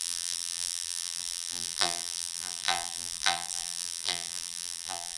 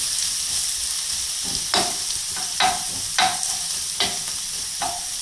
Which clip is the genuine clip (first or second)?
second